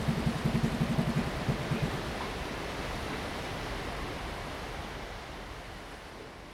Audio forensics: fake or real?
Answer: real